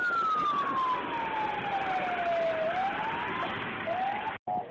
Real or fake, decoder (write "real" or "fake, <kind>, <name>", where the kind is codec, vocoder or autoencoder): real